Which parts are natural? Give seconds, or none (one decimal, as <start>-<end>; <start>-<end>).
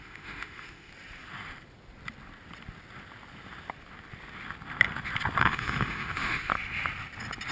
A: 0.9-5.4; 6.5-7.5